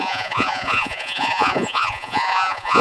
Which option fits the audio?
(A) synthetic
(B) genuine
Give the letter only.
A